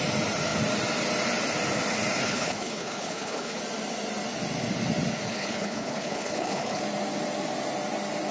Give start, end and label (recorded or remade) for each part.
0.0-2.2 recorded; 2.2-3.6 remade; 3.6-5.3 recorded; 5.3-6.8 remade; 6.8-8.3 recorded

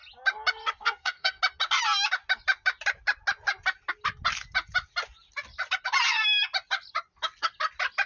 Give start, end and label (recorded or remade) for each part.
0.0-0.8 recorded; 0.8-1.4 remade; 1.4-8.1 recorded

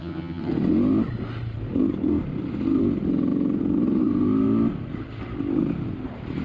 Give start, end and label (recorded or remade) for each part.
0.0-0.5 remade; 0.5-6.4 recorded

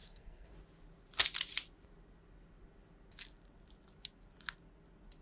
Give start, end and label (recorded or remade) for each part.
0.0-0.5 remade; 0.5-5.2 recorded

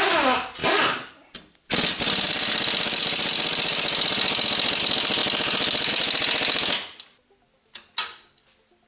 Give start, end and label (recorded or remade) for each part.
0.0-8.9 recorded

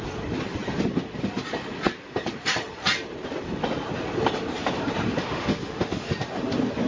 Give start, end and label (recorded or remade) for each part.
0.0-5.2 recorded; 5.2-6.1 remade; 6.1-6.9 recorded

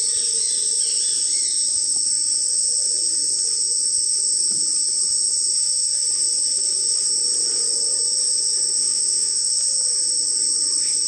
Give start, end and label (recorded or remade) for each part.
0.0-8.8 recorded; 8.8-9.5 remade; 9.5-11.1 recorded

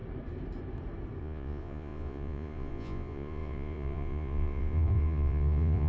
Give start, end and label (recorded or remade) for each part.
0.0-1.2 recorded; 1.2-5.9 remade